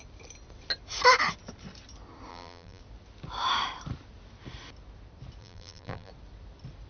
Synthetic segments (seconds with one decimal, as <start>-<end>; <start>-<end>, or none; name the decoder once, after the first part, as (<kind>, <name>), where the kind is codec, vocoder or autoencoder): 2.3-2.8 (vocoder, BigVGAN v2); 5.4-6.1